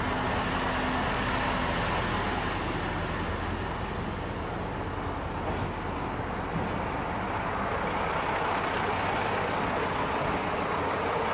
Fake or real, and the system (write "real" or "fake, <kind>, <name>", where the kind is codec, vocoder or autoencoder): real